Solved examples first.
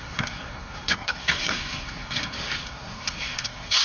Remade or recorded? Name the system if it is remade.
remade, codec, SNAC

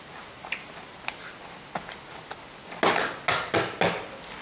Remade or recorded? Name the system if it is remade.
recorded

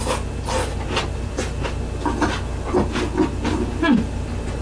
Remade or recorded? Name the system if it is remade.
recorded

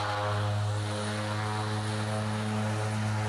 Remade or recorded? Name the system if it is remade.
recorded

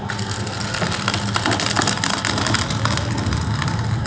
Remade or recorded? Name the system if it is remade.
recorded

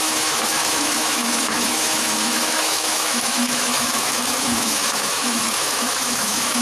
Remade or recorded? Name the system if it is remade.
remade, autoencoder, DAC-VAE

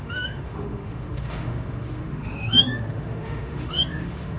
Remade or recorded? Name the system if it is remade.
remade, autoencoder, DAC-VAE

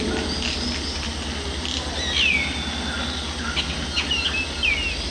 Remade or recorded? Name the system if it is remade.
recorded